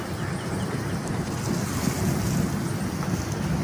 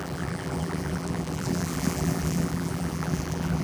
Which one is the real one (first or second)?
first